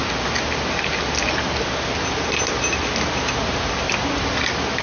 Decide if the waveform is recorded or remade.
recorded